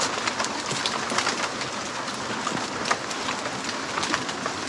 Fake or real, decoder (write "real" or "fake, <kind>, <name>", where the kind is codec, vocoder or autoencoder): real